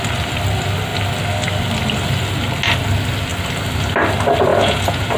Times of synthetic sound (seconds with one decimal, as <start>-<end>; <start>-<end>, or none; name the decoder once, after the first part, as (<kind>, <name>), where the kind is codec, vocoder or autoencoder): 4.5-5.2 (vocoder, Vocos)